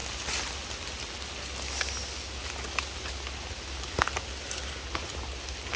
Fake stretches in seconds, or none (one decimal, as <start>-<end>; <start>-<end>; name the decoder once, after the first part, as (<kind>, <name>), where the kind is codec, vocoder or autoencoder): none